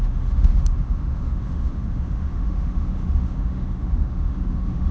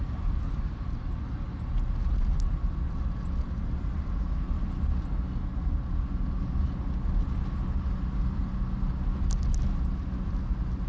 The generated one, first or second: first